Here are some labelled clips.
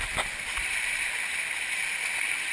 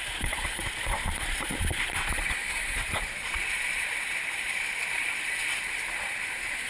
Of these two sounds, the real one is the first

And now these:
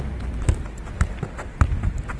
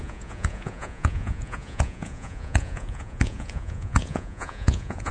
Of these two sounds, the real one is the first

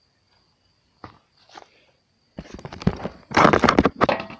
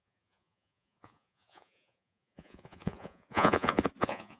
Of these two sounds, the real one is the first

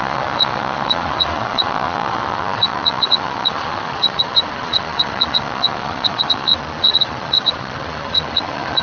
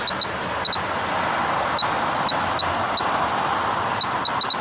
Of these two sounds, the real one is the second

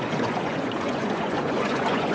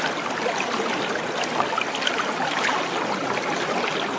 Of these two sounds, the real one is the second